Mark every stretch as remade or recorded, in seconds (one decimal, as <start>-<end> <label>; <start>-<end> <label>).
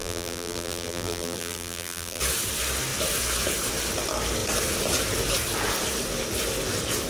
0.0-2.2 remade; 2.2-7.1 recorded